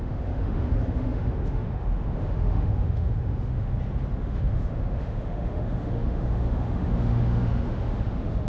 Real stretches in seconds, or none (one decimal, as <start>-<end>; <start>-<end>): 3.7-4.2